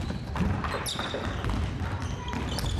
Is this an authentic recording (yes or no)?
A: yes